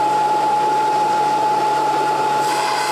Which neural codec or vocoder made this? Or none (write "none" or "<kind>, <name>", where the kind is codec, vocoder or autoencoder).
vocoder, BigVGAN v2